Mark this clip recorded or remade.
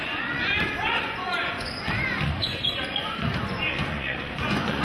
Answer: remade